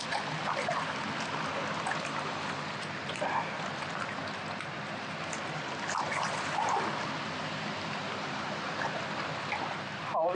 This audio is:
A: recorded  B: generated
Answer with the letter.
A